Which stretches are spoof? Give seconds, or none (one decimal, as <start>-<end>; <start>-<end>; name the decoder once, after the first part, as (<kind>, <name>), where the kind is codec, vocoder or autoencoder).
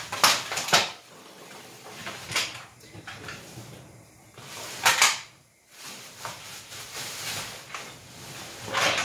2.0-7.2 (vocoder, BigVGAN v2)